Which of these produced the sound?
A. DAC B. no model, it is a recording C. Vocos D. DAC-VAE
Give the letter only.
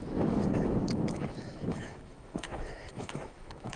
D